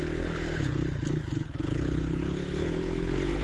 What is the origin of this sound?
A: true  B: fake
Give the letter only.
B